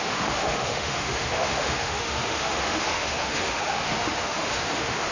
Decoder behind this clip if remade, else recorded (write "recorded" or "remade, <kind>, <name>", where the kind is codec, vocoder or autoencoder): remade, autoencoder, DAC-VAE